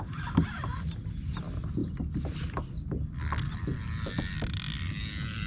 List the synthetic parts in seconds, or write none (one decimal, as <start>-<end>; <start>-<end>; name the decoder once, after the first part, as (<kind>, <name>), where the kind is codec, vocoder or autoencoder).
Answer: none